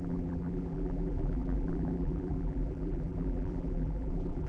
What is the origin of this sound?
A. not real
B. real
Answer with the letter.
A